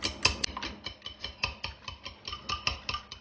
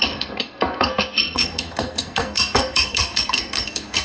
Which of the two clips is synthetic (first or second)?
second